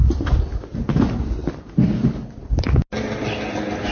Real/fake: real